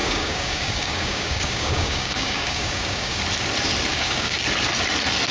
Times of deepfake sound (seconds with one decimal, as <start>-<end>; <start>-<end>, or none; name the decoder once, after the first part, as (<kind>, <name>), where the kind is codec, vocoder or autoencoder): 0.0-3.2 (codec, DAC); 3.9-4.4